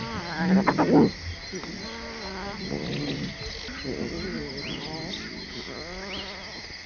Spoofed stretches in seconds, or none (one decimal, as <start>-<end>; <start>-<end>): none